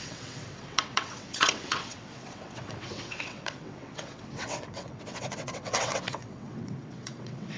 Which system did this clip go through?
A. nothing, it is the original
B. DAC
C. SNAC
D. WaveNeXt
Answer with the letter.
D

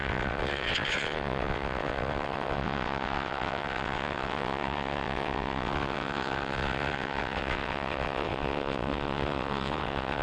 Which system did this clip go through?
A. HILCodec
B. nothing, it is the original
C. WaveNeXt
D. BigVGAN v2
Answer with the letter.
C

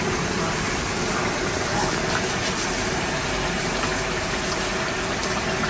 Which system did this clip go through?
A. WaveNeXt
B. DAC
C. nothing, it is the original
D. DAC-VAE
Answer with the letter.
C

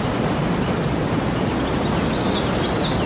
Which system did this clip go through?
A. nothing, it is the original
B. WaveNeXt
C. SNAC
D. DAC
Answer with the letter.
A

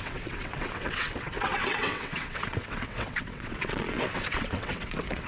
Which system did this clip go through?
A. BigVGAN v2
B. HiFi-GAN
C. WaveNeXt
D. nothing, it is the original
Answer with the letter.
C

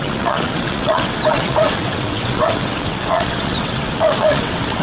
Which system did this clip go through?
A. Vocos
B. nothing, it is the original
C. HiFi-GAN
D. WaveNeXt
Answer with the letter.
D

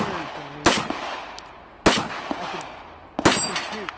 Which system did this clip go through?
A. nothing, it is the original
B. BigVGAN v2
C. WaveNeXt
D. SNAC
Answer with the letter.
A